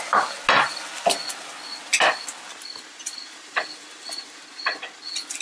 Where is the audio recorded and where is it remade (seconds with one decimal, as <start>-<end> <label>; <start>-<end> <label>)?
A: 0.0-5.4 recorded